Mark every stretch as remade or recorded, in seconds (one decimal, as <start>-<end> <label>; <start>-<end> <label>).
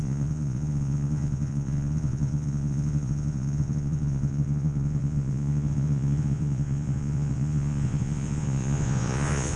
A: 0.0-9.6 remade